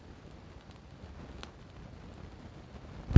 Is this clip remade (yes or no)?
no